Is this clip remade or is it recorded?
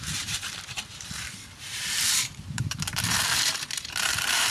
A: remade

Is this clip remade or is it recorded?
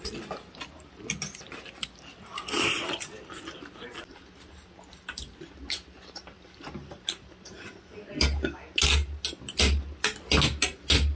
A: recorded